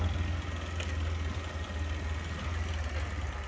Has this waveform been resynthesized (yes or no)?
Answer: no